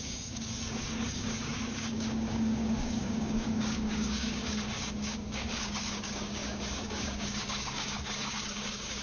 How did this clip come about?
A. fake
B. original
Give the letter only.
A